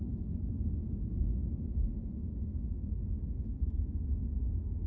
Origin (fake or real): real